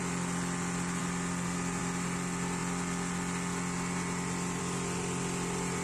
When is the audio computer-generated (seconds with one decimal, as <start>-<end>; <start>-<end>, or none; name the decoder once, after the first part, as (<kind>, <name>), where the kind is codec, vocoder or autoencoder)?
none